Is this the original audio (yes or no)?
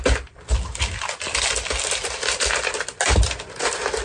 yes